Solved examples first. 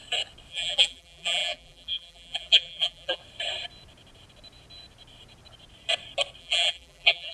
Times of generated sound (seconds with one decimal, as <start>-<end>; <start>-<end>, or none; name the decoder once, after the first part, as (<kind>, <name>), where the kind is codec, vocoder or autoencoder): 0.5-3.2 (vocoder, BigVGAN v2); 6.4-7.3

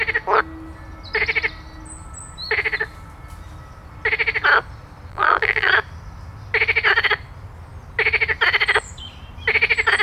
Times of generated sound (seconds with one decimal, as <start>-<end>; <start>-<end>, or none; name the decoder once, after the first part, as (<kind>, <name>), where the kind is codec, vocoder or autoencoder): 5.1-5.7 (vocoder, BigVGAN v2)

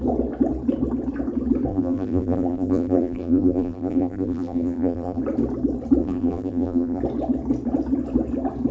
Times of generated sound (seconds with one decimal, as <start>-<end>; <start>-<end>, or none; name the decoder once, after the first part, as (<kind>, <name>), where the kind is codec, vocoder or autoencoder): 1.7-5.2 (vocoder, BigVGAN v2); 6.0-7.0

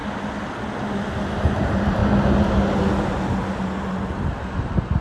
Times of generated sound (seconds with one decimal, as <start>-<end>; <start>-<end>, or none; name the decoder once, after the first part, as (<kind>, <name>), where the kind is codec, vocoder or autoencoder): 1.4-2.0 (vocoder, BigVGAN v2); 4.1-5.0

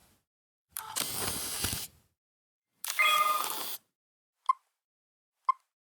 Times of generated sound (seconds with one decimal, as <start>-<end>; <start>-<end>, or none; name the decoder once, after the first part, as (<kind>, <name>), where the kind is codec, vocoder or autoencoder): 0.0-4.2 (vocoder, BigVGAN v2)